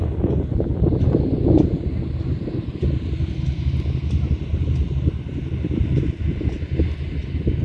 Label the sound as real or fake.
real